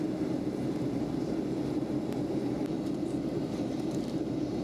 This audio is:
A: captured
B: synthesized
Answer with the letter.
B